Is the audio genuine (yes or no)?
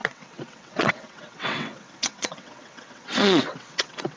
no